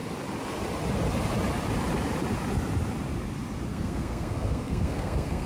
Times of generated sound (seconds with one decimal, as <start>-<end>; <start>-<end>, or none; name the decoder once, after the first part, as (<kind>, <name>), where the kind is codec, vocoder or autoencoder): 3.7-5.5 (codec, SNAC)